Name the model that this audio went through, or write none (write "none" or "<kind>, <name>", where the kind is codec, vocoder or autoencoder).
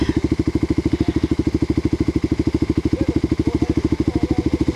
none